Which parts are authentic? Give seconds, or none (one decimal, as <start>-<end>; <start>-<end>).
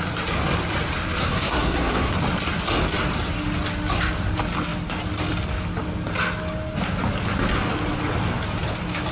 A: 0.0-1.2; 2.1-9.1